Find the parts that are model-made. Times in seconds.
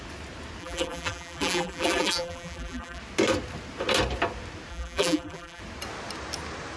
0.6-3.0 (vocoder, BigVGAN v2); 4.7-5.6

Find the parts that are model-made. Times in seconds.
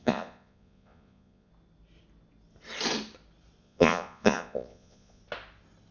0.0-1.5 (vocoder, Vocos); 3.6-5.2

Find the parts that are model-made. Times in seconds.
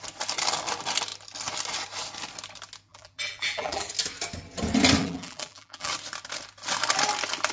2.9-3.9 (vocoder, BigVGAN v2); 5.0-5.9